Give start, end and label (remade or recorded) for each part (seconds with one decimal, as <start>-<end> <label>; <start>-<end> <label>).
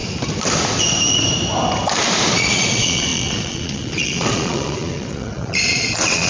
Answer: 0.0-2.3 recorded; 2.3-6.3 remade